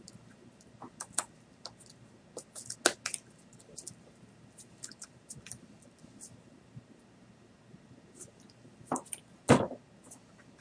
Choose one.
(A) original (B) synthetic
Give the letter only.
A